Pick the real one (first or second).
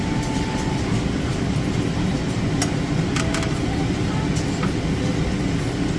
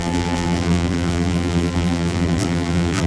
first